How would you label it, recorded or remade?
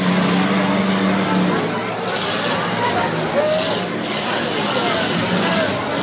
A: recorded